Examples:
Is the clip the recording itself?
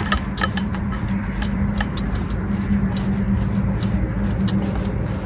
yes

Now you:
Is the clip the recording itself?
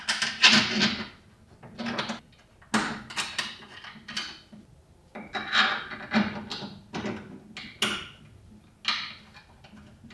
yes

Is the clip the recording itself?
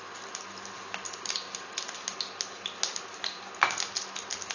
yes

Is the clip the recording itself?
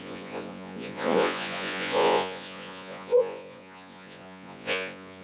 no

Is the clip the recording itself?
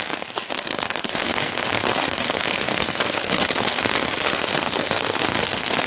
no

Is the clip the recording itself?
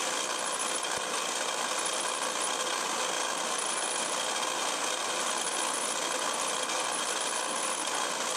yes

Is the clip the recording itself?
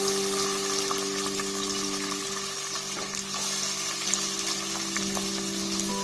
yes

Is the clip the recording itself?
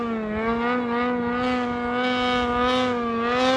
yes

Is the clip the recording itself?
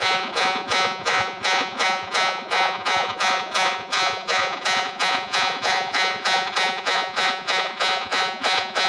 no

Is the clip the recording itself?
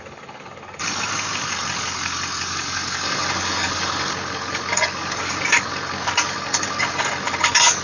no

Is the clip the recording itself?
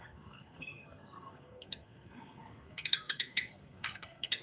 no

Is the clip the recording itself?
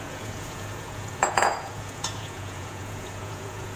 no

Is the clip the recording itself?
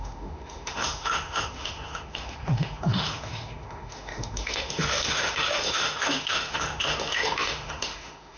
no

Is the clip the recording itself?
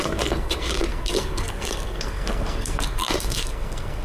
no